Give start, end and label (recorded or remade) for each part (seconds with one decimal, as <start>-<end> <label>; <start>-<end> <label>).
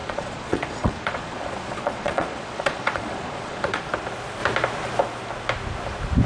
0.0-3.8 remade; 3.8-6.3 recorded